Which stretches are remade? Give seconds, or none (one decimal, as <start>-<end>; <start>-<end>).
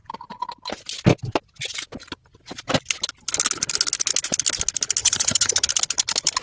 5.0-5.7